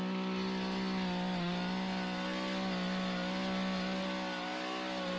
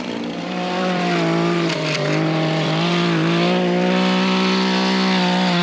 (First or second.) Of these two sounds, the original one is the first